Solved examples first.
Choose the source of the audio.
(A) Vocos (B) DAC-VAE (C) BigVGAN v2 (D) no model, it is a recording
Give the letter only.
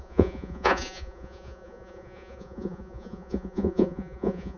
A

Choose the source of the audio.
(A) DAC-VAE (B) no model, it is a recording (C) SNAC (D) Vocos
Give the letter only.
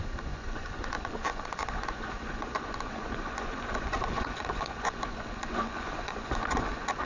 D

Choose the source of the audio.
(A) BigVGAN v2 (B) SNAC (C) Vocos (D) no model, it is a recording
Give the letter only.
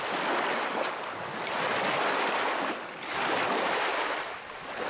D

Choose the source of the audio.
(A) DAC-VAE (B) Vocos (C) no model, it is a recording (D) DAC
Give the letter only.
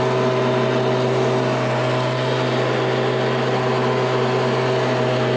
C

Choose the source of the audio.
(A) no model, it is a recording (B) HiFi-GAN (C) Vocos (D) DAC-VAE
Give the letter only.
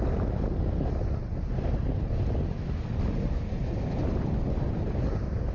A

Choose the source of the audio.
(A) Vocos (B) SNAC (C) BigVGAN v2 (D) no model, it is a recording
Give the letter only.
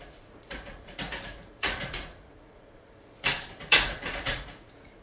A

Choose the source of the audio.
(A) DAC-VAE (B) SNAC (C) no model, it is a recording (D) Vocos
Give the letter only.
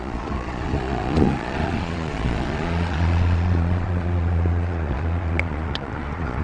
D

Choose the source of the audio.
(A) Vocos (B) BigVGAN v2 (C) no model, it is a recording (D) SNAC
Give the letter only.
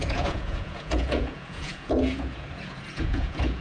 A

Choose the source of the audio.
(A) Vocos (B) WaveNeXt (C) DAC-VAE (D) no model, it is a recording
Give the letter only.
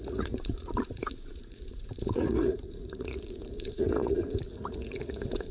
A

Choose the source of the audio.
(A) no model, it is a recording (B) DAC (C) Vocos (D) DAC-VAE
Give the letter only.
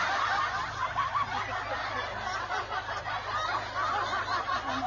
A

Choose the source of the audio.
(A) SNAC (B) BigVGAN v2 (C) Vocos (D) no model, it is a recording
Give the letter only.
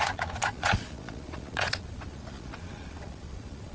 C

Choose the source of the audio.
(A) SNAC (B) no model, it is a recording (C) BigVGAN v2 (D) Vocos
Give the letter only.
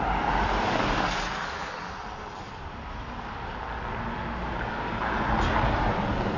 B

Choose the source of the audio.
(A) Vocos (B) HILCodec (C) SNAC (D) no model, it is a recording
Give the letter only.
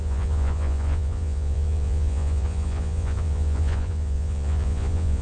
A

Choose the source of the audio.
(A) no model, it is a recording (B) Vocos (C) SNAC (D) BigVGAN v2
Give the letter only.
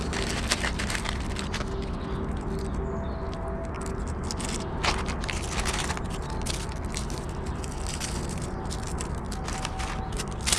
A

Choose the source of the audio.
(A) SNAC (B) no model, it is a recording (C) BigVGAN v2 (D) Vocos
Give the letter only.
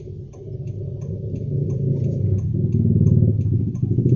B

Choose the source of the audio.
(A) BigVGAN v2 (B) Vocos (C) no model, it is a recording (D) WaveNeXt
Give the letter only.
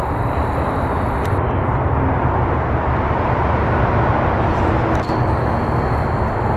C